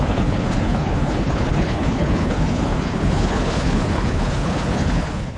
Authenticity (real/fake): fake